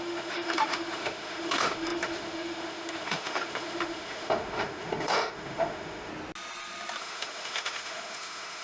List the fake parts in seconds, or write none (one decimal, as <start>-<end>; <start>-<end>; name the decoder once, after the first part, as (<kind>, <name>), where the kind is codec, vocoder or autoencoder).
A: 0.0-6.1 (autoencoder, DAC-VAE); 7.0-8.6